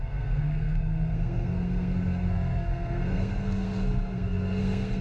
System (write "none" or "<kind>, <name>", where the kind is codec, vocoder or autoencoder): codec, SNAC